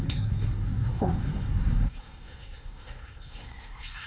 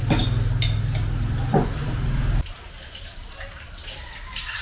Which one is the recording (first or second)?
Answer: second